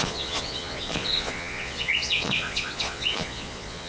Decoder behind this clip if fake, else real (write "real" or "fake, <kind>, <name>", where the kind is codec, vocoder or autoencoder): fake, vocoder, Vocos